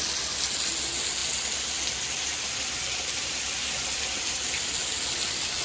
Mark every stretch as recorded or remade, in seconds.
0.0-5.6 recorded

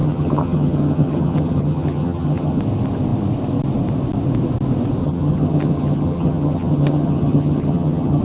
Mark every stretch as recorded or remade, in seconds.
0.0-2.6 remade; 2.6-5.0 recorded; 5.0-8.2 remade

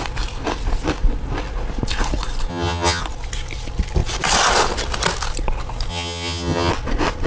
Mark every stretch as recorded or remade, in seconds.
0.0-2.5 recorded; 2.5-3.0 remade; 3.0-5.9 recorded; 5.9-6.7 remade; 6.7-7.3 recorded

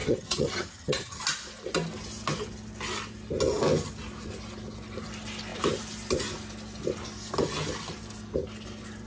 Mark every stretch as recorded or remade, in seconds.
0.0-1.2 remade; 1.2-9.1 recorded

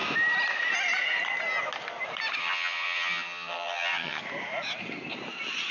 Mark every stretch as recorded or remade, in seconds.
0.0-2.4 recorded; 2.4-4.2 remade; 4.2-5.7 recorded

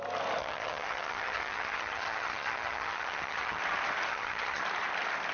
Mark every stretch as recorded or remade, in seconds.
0.0-0.4 recorded; 0.4-3.6 remade; 3.6-4.1 recorded; 4.1-4.6 remade; 4.6-5.3 recorded